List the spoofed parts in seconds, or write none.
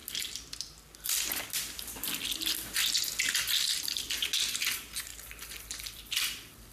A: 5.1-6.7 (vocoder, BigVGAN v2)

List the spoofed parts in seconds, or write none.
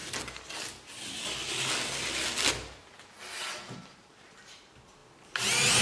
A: 3.5-5.8 (vocoder, BigVGAN v2)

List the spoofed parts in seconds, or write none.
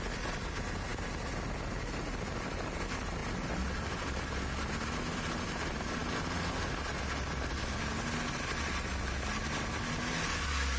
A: none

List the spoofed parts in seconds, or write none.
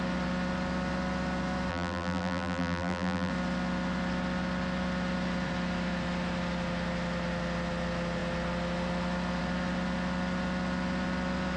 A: 1.7-3.3 (vocoder, BigVGAN v2)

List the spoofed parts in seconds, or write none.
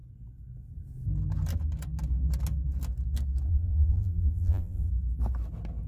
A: 3.5-4.9 (vocoder, BigVGAN v2)